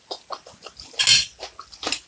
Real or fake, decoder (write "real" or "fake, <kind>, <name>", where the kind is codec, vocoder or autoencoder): real